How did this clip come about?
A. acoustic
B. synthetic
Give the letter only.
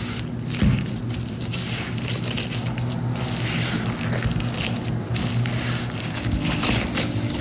A